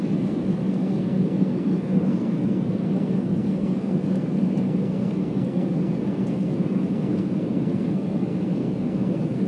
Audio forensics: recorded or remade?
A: remade